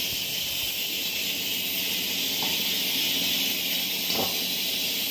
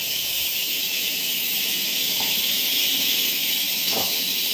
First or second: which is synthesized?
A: second